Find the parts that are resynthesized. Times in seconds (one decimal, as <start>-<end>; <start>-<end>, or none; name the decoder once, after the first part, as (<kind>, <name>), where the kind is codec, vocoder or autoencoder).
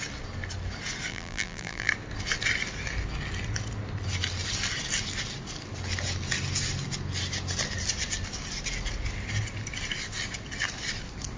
1.1-1.9 (vocoder, BigVGAN v2)